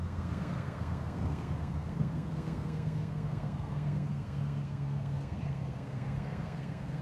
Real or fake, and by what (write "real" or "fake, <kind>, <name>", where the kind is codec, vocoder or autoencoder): fake, codec, SNAC